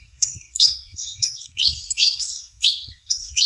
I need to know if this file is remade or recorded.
remade